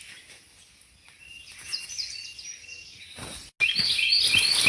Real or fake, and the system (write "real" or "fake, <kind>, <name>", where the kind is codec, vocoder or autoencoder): real